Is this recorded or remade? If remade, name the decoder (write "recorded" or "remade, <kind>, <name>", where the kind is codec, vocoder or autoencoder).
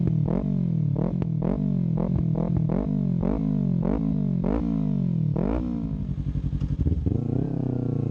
recorded